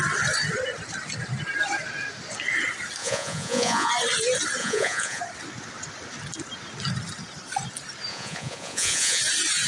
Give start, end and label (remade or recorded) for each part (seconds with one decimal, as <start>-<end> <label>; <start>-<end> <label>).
0.0-3.0 recorded; 3.0-3.9 remade; 3.9-4.6 recorded; 4.6-5.2 remade; 5.2-8.1 recorded; 8.1-9.2 remade; 9.2-9.7 recorded